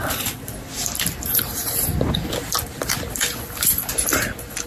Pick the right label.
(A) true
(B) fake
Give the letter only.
B